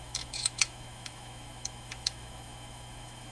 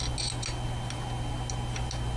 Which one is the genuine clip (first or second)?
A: second